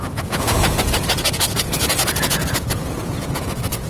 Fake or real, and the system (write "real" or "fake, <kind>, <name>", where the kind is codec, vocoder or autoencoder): fake, vocoder, Vocos